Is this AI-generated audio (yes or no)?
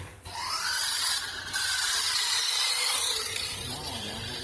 yes